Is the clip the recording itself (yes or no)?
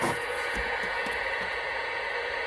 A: no